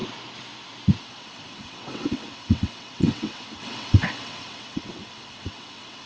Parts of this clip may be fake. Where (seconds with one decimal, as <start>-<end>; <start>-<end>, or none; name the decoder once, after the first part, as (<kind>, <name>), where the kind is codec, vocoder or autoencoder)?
1.0-6.1 (vocoder, WaveNeXt)